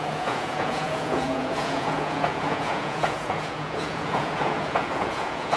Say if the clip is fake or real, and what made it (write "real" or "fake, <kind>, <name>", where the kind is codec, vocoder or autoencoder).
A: fake, vocoder, Vocos